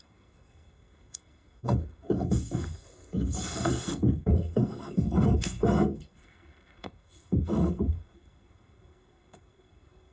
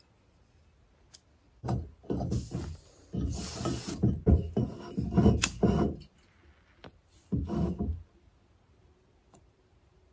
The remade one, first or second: first